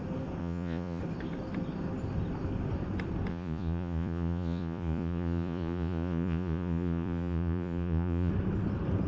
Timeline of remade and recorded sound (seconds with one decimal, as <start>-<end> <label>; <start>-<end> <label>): 0.0-0.4 recorded; 0.4-1.0 remade; 1.0-3.3 recorded; 3.3-8.3 remade; 8.3-9.1 recorded